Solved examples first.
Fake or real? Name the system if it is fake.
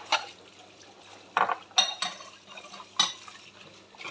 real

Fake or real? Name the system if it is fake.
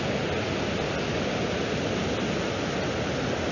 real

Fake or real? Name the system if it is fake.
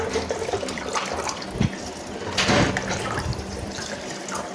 real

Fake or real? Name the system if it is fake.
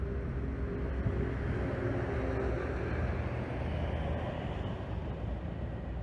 real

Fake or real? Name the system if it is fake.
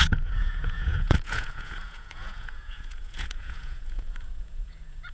fake, vocoder, Vocos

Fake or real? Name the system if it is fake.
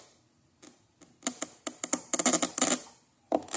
real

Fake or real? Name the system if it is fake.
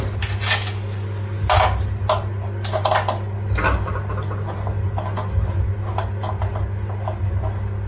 real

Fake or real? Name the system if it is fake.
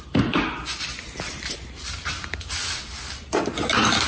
real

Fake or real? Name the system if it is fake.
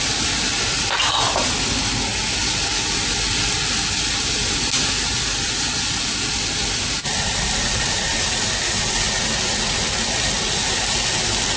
real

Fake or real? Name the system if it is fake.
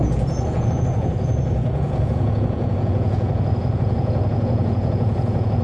fake, vocoder, Vocos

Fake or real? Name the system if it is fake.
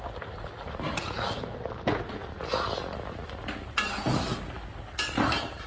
real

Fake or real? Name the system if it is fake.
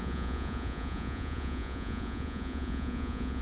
fake, vocoder, Vocos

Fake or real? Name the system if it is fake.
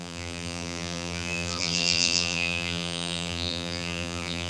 fake, vocoder, BigVGAN v2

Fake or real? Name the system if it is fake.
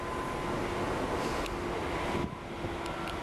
real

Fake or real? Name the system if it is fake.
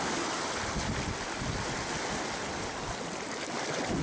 real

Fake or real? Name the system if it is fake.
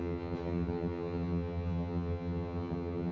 fake, vocoder, HiFi-GAN